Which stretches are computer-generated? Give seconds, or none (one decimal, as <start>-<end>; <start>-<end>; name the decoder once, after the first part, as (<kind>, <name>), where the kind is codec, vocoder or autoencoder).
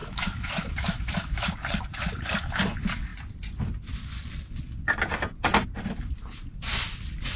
0.0-1.5 (autoencoder, DAC-VAE)